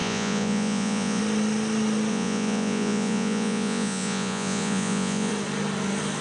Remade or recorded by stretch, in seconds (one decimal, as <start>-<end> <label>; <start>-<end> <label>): 0.0-1.2 remade; 1.2-2.1 recorded; 2.1-5.3 remade; 5.3-6.2 recorded